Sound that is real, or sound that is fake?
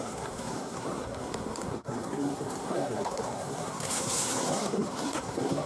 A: fake